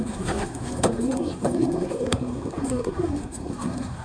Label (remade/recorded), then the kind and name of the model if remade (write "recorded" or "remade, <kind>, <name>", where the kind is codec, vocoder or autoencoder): remade, codec, SNAC